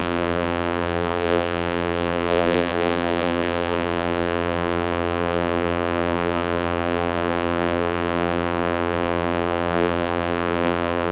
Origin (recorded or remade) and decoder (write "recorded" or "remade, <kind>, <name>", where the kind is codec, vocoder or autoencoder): remade, vocoder, BigVGAN v2